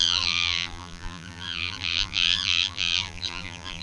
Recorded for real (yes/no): no